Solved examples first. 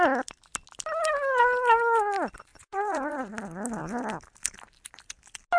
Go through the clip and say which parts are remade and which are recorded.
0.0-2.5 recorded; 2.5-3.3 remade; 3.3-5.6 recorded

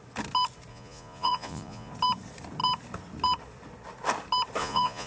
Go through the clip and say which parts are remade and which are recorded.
0.0-0.7 recorded; 0.7-1.9 remade; 1.9-4.6 recorded; 4.6-5.1 remade

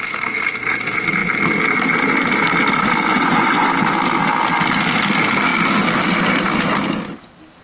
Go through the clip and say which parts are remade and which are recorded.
0.0-3.1 recorded; 3.1-3.7 remade; 3.7-7.6 recorded

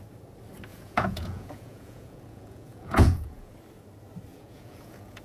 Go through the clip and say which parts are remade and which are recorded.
0.0-0.7 recorded; 0.7-3.5 remade; 3.5-4.3 recorded; 4.3-5.2 remade

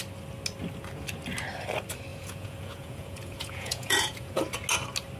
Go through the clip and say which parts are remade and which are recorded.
0.0-2.1 recorded; 2.1-4.5 remade; 4.5-5.2 recorded

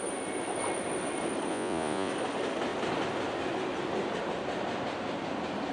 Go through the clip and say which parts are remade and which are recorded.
0.0-1.5 recorded; 1.5-2.1 remade; 2.1-5.7 recorded

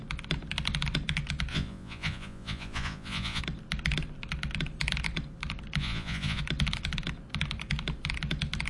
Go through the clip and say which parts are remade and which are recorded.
0.0-1.5 recorded; 1.5-3.4 remade; 3.4-5.8 recorded; 5.8-6.4 remade; 6.4-8.7 recorded

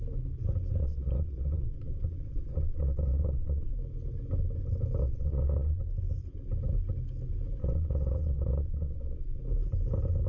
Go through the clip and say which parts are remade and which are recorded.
0.0-0.8 recorded; 0.8-3.7 remade; 3.7-5.0 recorded; 5.0-5.8 remade; 5.8-7.6 recorded; 7.6-9.4 remade; 9.4-10.3 recorded